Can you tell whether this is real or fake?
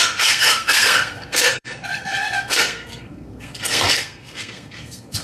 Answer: fake